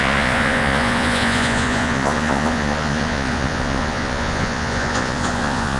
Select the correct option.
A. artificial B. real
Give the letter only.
A